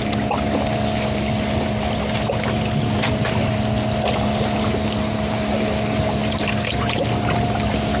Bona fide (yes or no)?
yes